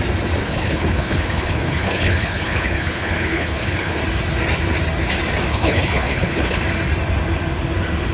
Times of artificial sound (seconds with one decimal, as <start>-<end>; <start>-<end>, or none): 0.4-4.0; 5.5-6.6

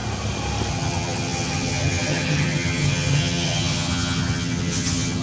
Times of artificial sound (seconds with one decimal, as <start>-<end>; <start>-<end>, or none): 0.7-5.2

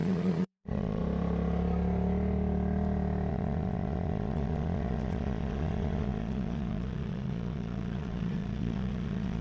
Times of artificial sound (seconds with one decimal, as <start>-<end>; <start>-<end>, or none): 0.0-1.0; 3.3-9.4